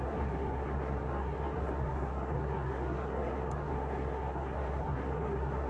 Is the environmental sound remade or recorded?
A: remade